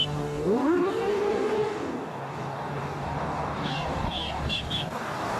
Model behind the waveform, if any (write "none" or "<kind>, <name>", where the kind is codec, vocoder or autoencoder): codec, DAC